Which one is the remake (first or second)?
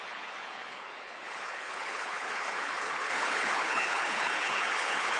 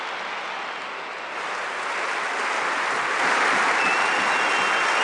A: first